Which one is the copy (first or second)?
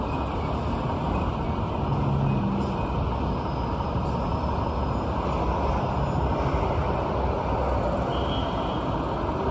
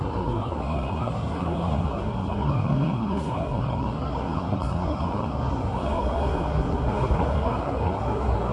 second